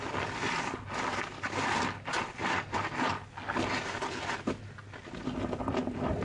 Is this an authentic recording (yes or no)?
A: yes